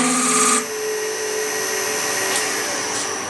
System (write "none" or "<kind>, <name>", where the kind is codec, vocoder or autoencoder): none